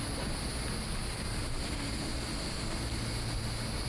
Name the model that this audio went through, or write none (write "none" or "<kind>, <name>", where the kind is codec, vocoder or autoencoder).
none